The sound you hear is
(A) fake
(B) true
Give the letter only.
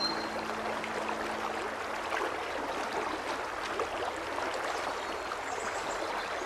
B